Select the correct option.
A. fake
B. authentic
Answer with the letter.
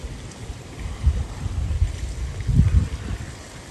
B